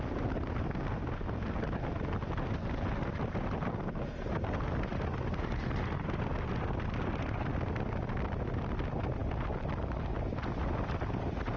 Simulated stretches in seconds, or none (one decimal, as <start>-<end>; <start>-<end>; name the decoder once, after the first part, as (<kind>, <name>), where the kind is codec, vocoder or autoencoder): none